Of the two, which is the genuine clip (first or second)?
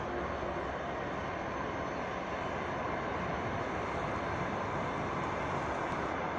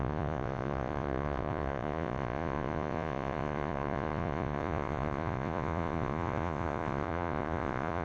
first